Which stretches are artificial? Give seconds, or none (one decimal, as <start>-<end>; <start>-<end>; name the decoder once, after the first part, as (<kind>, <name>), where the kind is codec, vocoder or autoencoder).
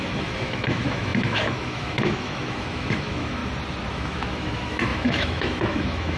0.0-3.4 (autoencoder, DAC-VAE); 3.9-6.2